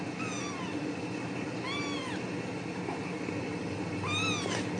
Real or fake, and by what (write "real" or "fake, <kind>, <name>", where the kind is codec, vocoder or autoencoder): real